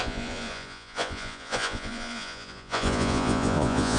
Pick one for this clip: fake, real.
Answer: fake